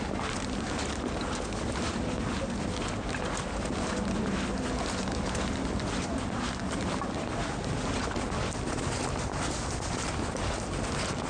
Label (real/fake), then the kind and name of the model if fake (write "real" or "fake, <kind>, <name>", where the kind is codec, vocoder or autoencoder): real